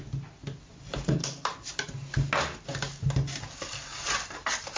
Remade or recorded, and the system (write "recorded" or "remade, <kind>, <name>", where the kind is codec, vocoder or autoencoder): recorded